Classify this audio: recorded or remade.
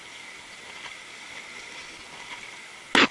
recorded